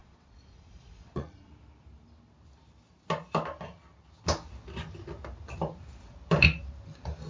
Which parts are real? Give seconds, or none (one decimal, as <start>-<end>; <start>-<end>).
1.5-7.3